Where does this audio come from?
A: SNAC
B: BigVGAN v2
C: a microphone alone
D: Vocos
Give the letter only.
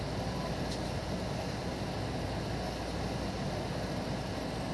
C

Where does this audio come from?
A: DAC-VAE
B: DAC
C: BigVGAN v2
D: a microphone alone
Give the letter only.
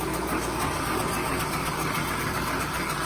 B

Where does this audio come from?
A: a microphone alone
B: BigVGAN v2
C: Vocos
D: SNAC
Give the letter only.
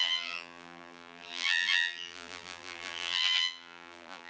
B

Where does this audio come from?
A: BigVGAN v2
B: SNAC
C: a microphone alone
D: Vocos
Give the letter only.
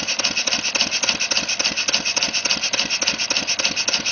C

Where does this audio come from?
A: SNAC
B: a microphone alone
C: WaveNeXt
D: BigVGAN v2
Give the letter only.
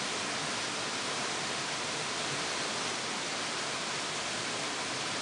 B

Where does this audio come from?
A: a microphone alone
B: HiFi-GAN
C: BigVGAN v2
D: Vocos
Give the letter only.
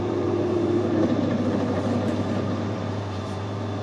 C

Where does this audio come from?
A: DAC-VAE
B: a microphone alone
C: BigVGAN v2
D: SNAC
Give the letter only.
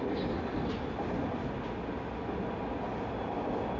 B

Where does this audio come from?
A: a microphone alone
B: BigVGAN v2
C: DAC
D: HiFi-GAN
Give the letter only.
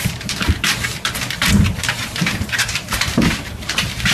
B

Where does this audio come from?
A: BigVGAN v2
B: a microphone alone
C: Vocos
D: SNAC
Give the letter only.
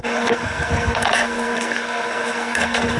D